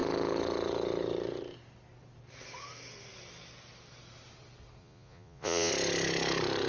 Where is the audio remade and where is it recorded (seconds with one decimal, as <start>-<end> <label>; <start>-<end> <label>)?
0.0-4.8 recorded; 4.8-5.7 remade; 5.7-6.7 recorded